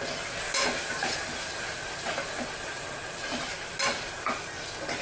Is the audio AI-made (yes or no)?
no